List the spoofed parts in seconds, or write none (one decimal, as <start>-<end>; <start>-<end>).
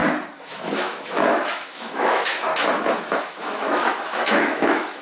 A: 0.5-2.5; 3.2-5.0